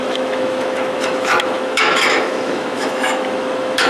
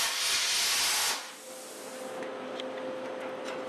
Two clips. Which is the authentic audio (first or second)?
second